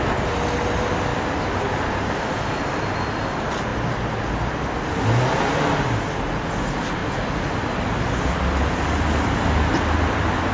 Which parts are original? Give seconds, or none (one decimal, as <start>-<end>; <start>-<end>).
0.0-10.5